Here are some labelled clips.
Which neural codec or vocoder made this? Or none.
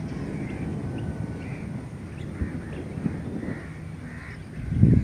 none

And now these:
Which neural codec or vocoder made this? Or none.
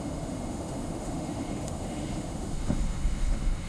autoencoder, DAC-VAE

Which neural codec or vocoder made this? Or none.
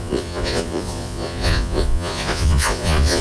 vocoder, Vocos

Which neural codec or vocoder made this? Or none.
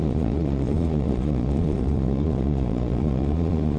vocoder, Vocos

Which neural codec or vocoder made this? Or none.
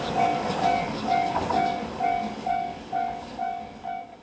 codec, DAC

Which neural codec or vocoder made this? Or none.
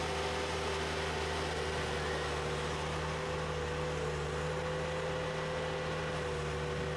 none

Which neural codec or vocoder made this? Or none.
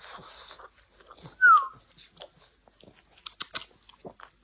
none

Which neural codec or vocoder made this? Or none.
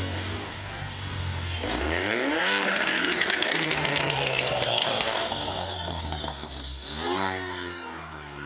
codec, DAC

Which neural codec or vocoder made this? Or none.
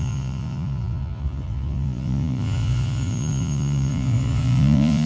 vocoder, Vocos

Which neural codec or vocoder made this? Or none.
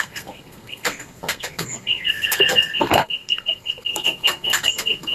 codec, SNAC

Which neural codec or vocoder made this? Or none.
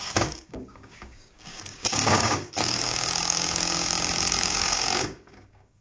codec, DAC